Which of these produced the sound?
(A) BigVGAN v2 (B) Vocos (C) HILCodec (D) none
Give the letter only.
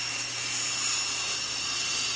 D